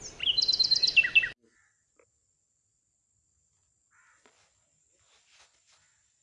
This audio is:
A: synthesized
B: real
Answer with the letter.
B